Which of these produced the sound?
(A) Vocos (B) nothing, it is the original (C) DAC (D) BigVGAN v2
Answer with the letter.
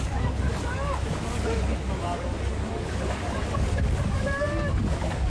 C